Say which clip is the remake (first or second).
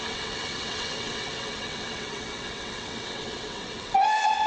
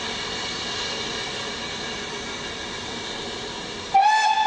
first